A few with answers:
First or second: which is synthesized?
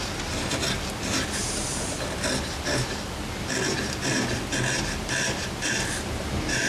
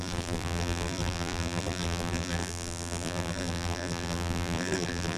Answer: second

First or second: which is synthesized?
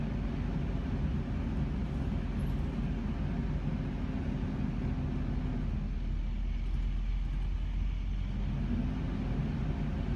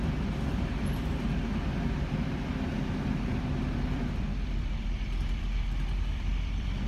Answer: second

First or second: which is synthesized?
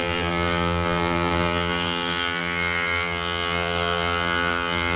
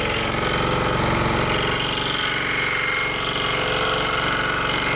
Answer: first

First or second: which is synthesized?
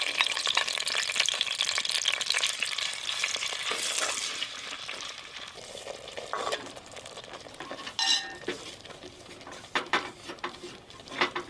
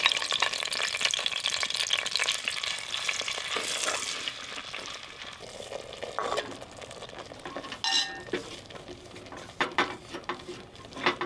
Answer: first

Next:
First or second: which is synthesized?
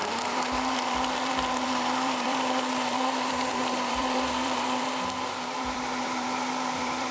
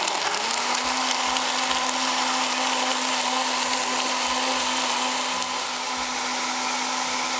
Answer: first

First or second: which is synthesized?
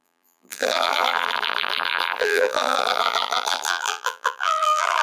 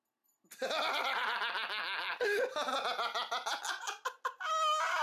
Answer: first